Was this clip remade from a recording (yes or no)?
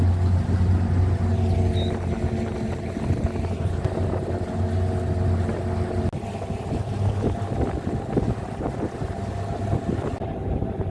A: no